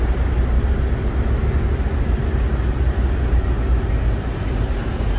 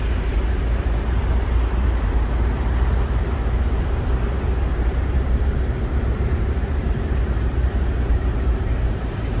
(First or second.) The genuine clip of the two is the first